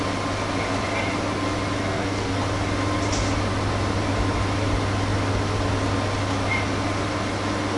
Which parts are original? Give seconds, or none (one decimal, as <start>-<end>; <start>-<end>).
0.0-1.8; 2.4-7.8